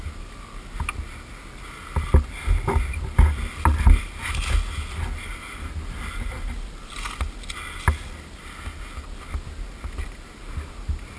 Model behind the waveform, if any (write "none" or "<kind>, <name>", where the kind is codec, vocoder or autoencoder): none